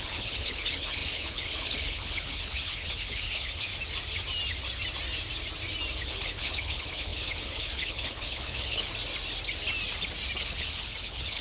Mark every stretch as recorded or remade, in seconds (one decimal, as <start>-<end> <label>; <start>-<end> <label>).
0.0-3.7 remade; 3.7-6.0 recorded; 6.0-8.9 remade; 8.9-10.4 recorded; 10.4-11.4 remade